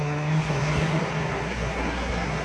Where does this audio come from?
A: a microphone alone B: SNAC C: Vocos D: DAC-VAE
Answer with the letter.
B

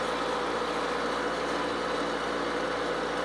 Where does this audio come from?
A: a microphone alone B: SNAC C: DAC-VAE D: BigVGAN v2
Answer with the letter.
A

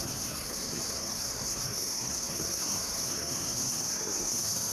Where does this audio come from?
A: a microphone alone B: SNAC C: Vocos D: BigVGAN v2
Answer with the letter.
B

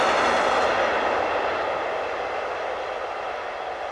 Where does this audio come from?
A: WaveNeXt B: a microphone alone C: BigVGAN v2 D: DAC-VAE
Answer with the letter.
B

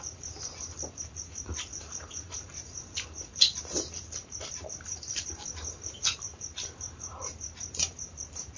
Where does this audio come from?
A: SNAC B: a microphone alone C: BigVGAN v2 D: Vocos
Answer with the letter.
C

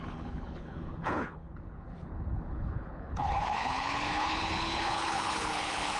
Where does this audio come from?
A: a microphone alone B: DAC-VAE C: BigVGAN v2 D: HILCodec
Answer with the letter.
D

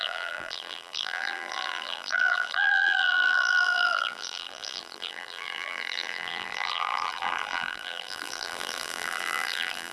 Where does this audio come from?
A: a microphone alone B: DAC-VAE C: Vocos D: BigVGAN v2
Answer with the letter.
D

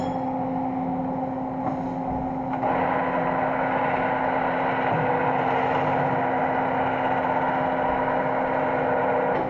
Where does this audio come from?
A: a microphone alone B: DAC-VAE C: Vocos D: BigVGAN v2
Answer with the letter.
A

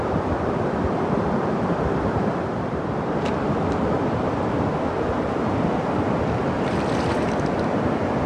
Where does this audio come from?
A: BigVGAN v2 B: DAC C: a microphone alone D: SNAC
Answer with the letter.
A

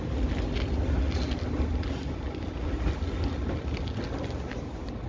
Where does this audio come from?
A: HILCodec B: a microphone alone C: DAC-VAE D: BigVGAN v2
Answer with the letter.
B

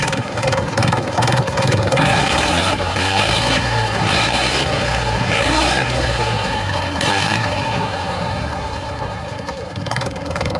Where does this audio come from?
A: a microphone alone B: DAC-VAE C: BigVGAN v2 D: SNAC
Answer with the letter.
D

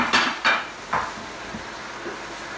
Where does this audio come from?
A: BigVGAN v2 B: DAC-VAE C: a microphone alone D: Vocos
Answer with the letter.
C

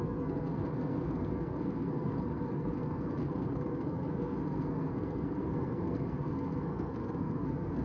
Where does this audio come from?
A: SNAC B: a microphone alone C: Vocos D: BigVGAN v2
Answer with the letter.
A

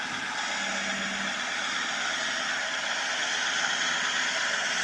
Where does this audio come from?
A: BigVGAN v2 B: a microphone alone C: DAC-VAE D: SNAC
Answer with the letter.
B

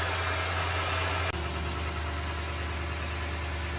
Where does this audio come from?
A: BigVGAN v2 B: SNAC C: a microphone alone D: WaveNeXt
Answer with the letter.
C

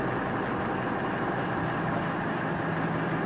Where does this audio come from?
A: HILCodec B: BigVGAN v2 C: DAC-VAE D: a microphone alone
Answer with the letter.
D